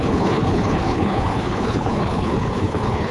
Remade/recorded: remade